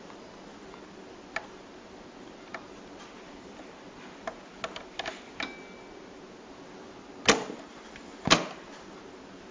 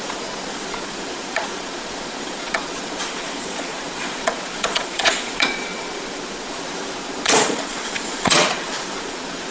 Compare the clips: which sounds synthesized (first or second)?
second